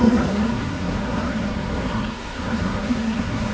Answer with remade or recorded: remade